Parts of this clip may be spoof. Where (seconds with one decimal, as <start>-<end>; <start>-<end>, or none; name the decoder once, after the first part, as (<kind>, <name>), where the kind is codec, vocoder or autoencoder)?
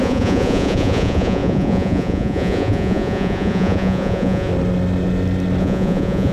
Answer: 0.0-4.5 (vocoder, Vocos); 5.6-6.3